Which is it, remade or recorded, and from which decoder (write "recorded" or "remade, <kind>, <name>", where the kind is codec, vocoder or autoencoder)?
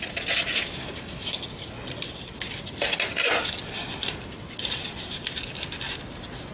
recorded